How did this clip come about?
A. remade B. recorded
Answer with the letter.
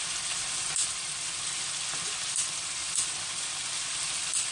B